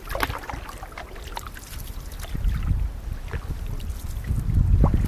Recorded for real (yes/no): yes